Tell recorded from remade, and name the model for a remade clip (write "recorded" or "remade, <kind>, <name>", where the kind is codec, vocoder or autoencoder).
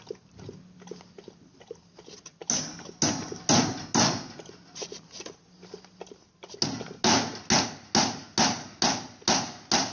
recorded